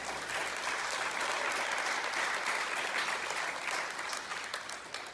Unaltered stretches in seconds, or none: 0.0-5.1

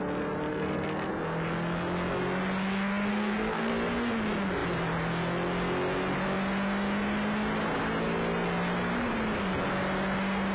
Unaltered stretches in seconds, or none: 0.0-0.5; 1.1-3.1; 3.7-10.5